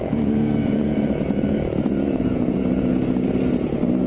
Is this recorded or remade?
remade